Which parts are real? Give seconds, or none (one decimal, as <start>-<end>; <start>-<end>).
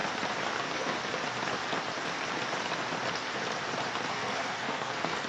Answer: 0.0-0.6; 1.0-4.1